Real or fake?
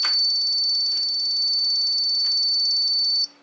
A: real